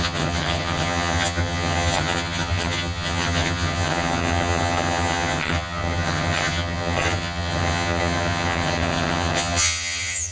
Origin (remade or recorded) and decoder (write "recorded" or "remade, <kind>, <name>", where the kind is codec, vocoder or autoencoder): remade, vocoder, HiFi-GAN